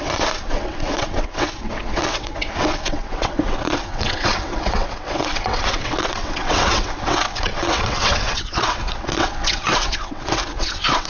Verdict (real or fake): fake